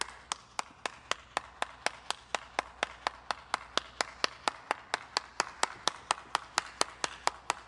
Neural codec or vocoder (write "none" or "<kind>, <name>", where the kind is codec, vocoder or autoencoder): none